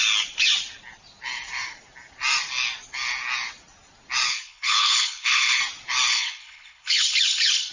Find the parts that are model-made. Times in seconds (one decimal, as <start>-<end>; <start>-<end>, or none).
4.3-5.6; 6.1-7.7

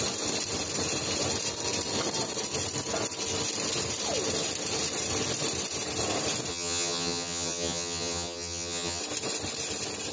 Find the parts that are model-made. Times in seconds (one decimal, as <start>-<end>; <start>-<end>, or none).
6.5-9.0

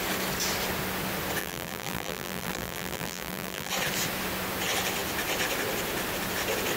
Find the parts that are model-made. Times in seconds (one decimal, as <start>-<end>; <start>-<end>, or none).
1.4-3.7

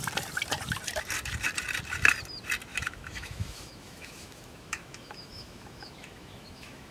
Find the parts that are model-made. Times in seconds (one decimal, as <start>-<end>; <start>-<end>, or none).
2.7-6.9

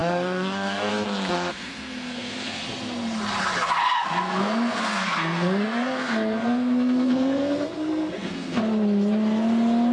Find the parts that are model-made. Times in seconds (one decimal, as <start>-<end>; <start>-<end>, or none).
0.0-0.9; 1.5-2.6; 3.8-8.6

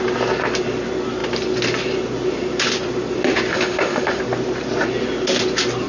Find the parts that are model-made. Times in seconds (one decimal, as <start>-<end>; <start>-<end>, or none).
3.5-4.2

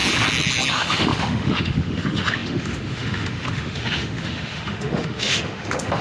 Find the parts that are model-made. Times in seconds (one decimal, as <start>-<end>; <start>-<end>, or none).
0.7-6.0